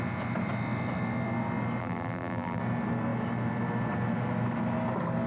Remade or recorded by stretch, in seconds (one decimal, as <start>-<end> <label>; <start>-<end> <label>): 0.0-1.8 recorded; 1.8-2.6 remade; 2.6-5.3 recorded